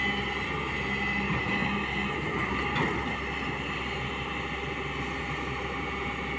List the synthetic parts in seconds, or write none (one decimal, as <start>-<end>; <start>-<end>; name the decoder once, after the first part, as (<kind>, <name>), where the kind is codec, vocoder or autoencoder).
none